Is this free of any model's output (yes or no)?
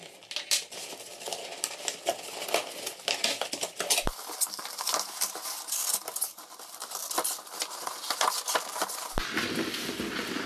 no